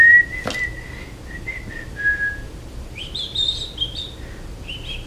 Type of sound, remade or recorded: recorded